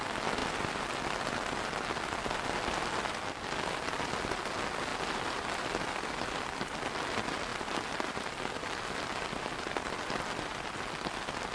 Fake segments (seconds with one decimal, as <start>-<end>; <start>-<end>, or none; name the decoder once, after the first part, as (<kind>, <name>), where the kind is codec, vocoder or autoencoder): 0.4-0.9 (vocoder, BigVGAN v2); 4.9-6.4; 7.5-10.7